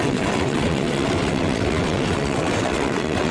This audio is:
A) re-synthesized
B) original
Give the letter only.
A